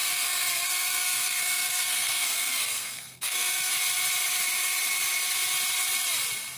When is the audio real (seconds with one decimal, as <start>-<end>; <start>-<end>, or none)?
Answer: 3.7-6.6

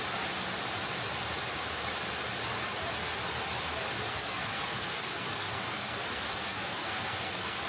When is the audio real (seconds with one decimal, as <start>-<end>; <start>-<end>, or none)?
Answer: 0.0-4.1

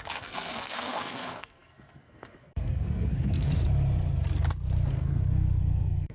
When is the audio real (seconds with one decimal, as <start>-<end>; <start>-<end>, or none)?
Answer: 3.5-4.9